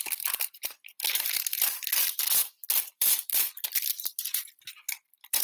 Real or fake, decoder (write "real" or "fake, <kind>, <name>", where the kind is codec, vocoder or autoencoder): fake, vocoder, BigVGAN v2